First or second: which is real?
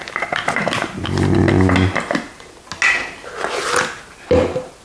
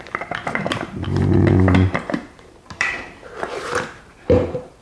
first